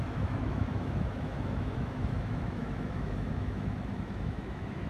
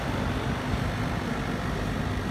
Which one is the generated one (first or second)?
first